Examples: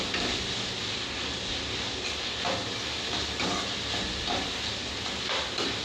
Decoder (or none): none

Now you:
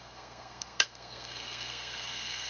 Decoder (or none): codec, SNAC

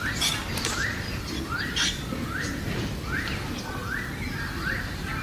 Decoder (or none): none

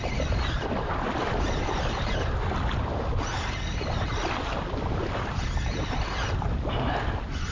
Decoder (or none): none